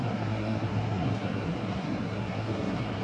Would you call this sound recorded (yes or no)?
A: no